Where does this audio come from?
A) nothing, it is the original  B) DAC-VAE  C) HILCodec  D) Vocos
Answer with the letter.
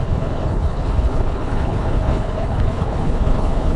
C